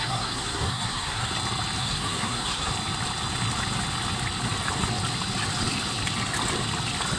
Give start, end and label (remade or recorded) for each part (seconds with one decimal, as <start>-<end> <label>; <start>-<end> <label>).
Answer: 0.0-1.3 remade; 1.3-1.8 recorded; 1.8-2.7 remade; 2.7-7.2 recorded